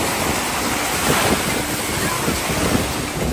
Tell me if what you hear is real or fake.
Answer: real